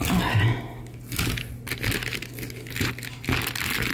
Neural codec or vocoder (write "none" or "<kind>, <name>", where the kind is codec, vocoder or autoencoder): none